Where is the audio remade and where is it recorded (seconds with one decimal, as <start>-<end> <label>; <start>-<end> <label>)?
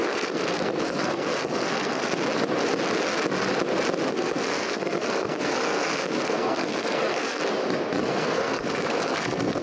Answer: 0.0-2.1 remade; 2.1-4.1 recorded; 4.1-7.4 remade; 7.4-8.0 recorded; 8.0-9.6 remade